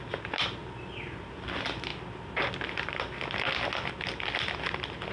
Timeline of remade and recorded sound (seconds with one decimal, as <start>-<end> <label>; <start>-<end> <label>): 0.0-5.1 recorded